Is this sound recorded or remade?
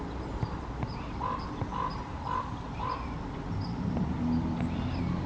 recorded